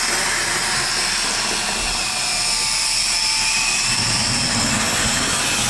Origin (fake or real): real